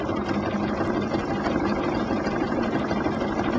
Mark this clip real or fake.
real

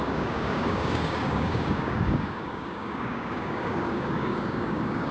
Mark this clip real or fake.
fake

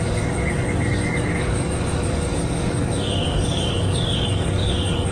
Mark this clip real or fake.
fake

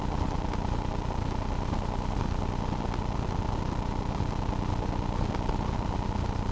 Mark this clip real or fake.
real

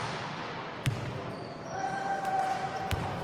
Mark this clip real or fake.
real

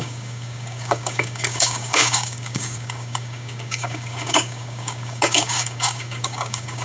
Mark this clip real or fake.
fake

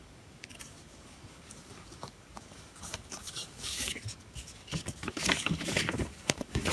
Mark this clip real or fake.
fake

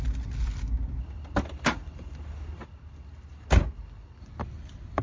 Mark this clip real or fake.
real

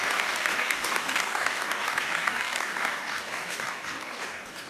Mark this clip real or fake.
fake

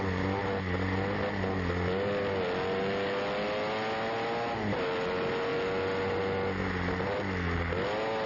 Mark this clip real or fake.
real